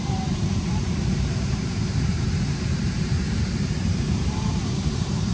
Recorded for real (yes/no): no